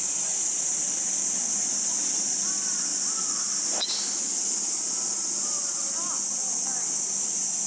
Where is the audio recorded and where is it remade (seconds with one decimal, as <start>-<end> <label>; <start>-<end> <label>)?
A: 0.0-2.9 remade; 2.9-7.0 recorded; 7.0-7.7 remade